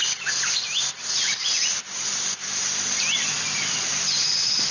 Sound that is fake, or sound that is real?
real